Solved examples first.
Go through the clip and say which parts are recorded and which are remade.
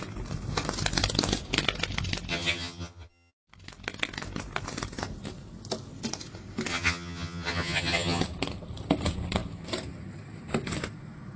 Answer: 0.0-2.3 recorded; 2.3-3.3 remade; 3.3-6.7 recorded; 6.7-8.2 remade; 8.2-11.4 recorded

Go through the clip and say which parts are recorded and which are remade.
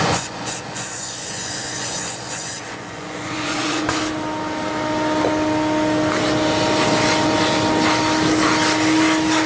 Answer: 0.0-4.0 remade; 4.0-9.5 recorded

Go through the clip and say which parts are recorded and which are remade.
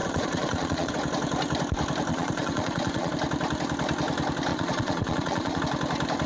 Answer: 0.0-0.9 remade; 0.9-2.1 recorded; 2.1-3.1 remade; 3.1-4.5 recorded; 4.5-5.6 remade; 5.6-6.3 recorded